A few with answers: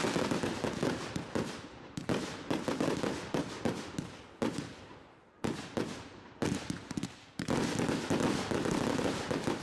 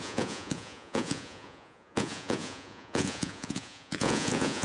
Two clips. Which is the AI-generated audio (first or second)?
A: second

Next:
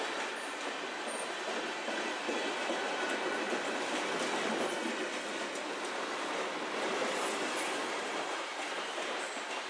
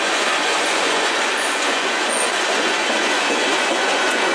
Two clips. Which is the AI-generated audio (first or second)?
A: second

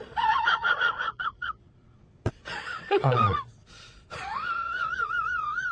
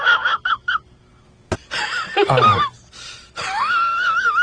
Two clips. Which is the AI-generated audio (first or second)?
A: first